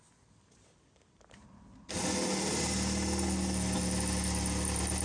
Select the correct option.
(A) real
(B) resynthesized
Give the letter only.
A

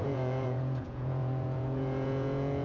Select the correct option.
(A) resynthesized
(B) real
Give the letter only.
A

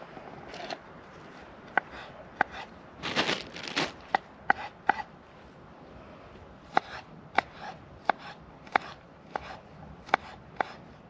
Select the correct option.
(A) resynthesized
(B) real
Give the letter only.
B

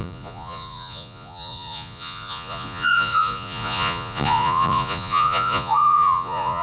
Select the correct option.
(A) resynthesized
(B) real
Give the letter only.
A